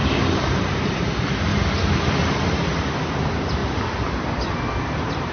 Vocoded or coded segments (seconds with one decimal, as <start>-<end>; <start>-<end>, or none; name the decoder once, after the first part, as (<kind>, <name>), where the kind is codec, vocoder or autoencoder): 0.0-1.5 (vocoder, BigVGAN v2); 3.0-3.6; 4.5-5.3